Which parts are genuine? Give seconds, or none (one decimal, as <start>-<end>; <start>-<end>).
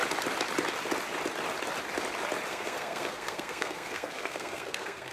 0.0-2.5